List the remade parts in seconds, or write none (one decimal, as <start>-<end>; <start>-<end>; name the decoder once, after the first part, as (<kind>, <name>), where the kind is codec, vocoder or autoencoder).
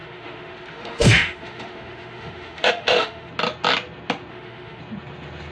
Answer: 0.0-3.3 (autoencoder, DAC-VAE); 4.3-4.8